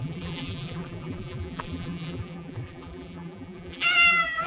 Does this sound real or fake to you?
fake